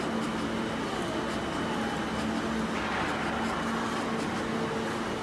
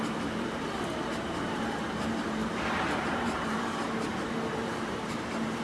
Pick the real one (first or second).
first